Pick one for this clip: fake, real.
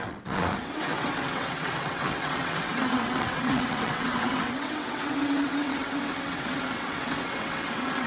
fake